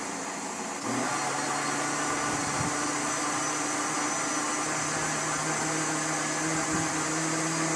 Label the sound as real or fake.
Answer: real